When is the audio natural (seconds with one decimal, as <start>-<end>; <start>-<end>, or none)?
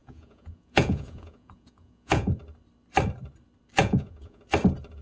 2.4-3.8; 4.4-5.0